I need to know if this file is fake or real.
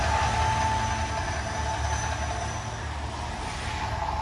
real